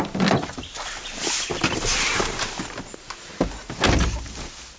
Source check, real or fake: real